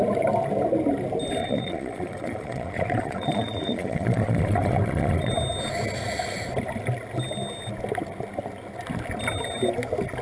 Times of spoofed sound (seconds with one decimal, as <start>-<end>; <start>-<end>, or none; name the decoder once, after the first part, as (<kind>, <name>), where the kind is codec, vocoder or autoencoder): 1.4-5.3 (vocoder, Vocos)